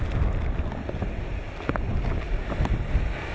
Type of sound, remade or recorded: recorded